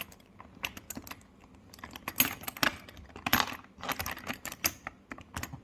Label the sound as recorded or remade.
recorded